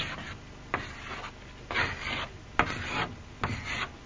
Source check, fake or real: real